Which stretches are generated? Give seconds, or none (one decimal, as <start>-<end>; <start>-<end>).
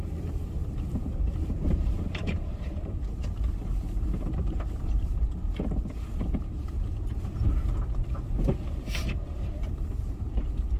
0.0-10.8